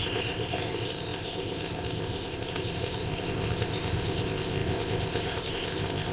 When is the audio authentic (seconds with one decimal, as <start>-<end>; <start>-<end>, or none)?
none